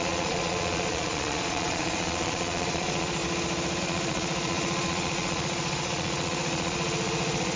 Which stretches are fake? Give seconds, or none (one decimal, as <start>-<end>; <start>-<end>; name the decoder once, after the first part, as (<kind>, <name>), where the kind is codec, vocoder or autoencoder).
0.0-3.2 (vocoder, Vocos); 3.8-7.6